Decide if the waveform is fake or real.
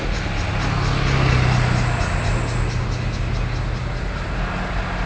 real